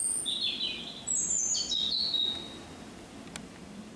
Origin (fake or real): real